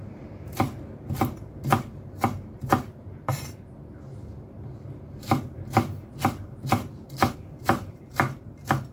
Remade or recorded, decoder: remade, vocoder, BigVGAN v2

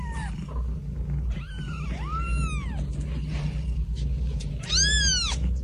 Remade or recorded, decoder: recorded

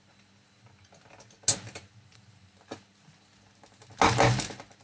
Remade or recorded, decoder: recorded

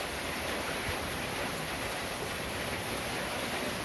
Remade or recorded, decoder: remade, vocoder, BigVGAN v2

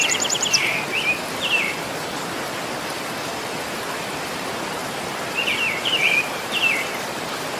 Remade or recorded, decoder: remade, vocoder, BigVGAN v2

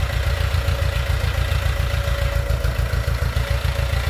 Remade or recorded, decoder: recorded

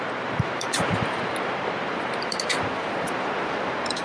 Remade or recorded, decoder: remade, vocoder, BigVGAN v2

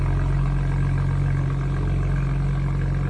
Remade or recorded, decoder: recorded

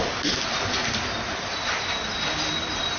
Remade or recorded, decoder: recorded